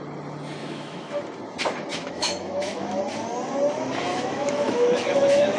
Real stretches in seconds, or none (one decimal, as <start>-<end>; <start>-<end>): 0.0-0.6; 1.2-1.9; 3.0-4.1